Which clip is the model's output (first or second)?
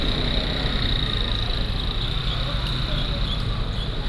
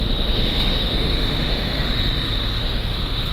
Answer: second